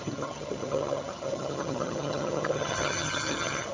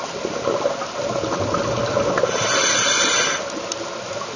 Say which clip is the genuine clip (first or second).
second